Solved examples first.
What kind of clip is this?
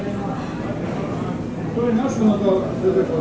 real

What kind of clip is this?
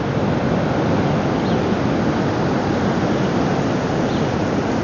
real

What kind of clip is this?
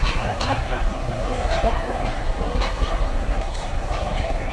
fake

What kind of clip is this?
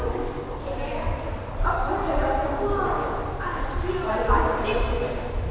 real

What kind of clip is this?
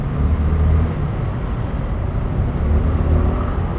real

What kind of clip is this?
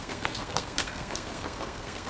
fake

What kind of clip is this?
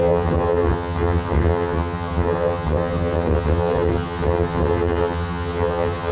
fake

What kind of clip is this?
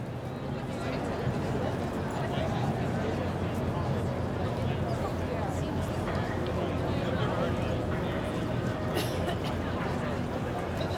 real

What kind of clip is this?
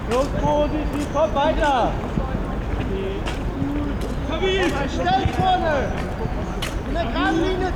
real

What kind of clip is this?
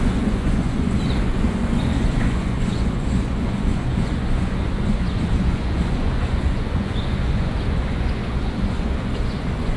fake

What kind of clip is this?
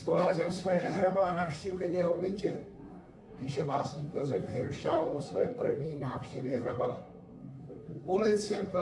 fake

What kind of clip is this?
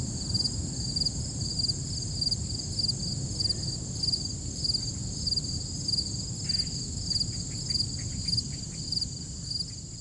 real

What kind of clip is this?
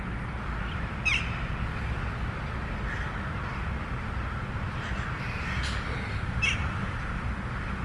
real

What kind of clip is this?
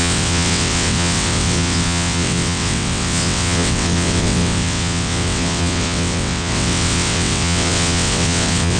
fake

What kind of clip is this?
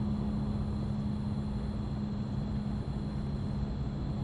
real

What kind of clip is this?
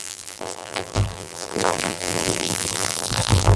fake